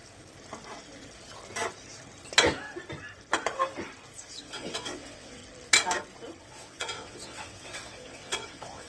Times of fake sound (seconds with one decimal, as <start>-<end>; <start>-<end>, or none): 4.4-5.4; 6.4-8.9